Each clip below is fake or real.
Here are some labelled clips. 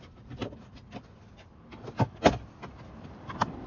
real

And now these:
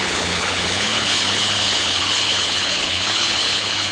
fake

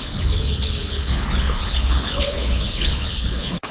fake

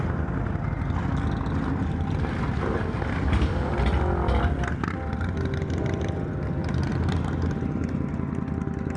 real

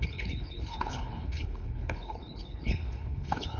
fake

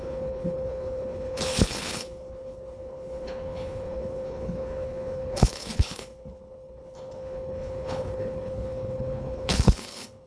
fake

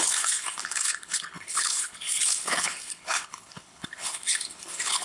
fake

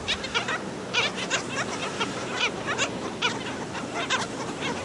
real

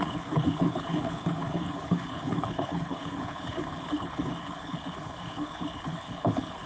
fake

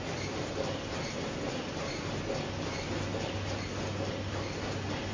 real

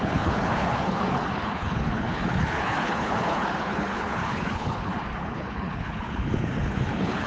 fake